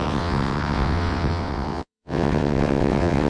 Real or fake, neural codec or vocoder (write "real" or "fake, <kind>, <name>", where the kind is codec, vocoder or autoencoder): fake, vocoder, WaveNeXt